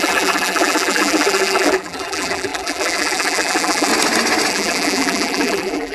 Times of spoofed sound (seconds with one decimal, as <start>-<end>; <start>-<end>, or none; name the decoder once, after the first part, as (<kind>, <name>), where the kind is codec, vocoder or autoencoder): 0.0-3.9 (vocoder, BigVGAN v2); 4.5-5.9